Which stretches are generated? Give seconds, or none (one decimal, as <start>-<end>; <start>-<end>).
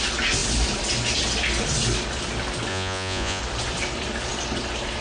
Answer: 2.7-3.4